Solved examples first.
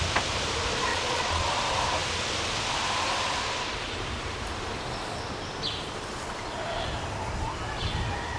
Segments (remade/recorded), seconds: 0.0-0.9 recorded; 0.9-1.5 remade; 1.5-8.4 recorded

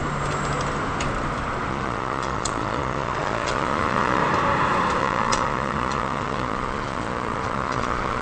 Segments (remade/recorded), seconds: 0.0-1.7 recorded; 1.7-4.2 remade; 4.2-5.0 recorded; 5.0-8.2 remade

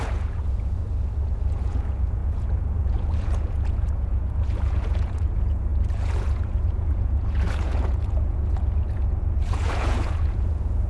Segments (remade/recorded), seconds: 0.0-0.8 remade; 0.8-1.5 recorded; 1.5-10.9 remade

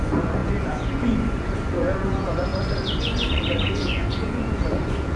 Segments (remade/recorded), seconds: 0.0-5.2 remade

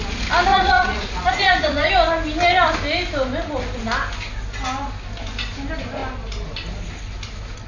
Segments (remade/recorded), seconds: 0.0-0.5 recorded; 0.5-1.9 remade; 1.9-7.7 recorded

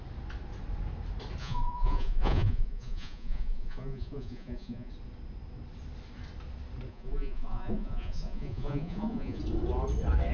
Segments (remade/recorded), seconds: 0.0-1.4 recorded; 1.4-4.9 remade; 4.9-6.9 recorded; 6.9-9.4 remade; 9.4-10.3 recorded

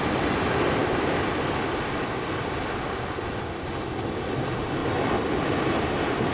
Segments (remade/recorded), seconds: 0.0-6.3 recorded

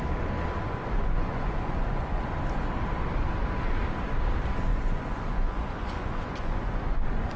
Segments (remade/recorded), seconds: 0.0-0.6 recorded; 0.6-2.2 remade; 2.2-4.7 recorded; 4.7-7.4 remade